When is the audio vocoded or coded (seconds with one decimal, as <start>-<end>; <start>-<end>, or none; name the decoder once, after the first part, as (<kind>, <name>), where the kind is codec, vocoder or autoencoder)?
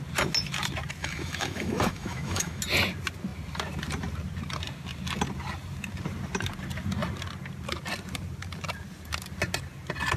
1.0-2.6 (autoencoder, DAC-VAE)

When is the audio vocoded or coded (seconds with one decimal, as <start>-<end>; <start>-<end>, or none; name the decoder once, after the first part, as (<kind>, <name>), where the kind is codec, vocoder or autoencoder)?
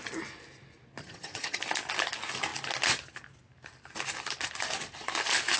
1.0-1.6 (vocoder, HiFi-GAN)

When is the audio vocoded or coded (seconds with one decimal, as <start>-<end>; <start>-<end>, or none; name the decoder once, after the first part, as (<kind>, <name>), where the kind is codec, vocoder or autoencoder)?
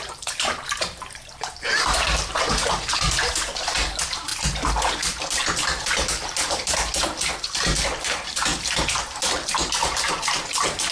0.0-4.3 (vocoder, BigVGAN v2); 4.9-8.5; 9.5-10.9